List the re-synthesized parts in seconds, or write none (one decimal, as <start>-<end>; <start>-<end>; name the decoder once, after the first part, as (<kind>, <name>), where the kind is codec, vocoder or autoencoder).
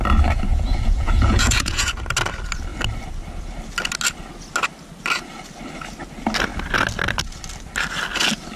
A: 0.5-1.9 (vocoder, Vocos)